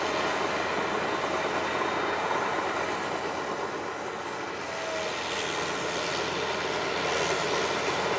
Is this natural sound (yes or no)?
yes